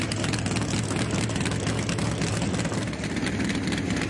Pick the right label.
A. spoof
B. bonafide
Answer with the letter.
B